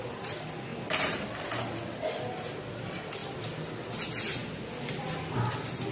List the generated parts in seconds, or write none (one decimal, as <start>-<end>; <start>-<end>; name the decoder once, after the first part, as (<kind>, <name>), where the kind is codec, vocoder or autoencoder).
none